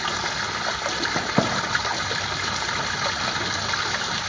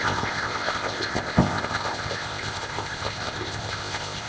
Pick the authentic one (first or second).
first